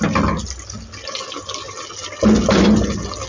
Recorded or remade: recorded